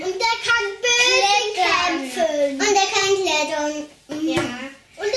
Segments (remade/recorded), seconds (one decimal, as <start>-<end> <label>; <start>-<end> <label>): 0.0-5.2 recorded